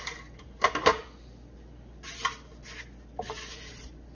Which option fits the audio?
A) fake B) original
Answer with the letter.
B